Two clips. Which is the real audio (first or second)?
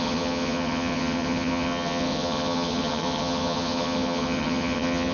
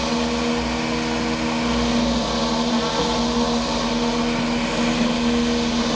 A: second